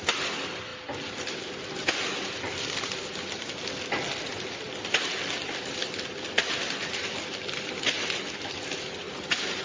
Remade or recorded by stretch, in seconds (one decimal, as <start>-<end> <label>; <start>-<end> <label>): 0.0-9.6 recorded